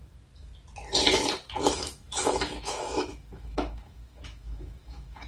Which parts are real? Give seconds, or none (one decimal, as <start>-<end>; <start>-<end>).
0.5-1.6